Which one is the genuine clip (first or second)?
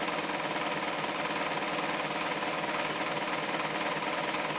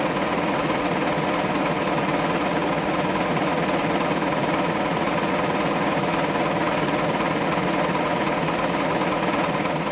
first